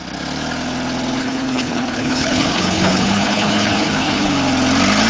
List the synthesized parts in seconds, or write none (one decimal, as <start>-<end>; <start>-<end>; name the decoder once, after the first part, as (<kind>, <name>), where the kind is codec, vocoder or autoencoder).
1.2-4.3 (codec, HILCodec)